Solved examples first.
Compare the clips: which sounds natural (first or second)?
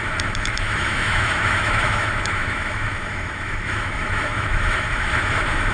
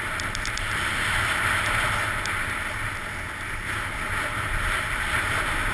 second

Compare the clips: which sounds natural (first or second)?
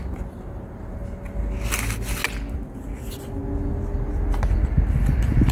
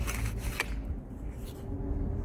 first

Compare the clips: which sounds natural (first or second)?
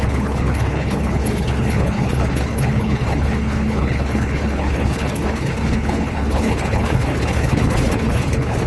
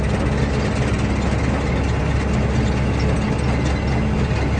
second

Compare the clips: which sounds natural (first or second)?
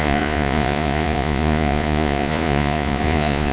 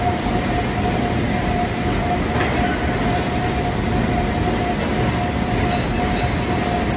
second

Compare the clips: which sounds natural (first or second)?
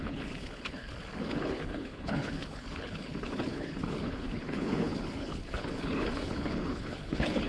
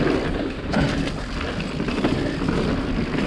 second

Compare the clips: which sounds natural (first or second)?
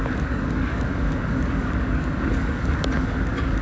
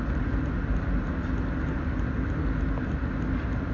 second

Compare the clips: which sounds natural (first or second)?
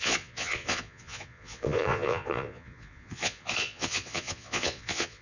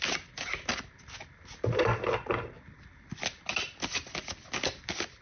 second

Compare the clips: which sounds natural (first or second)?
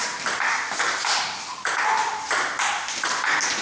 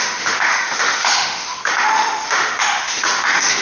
first